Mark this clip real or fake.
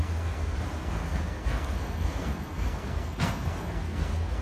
fake